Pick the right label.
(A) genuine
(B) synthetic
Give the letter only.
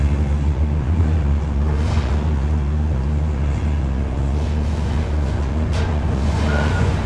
B